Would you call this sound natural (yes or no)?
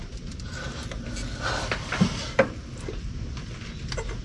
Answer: yes